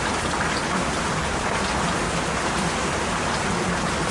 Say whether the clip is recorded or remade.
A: recorded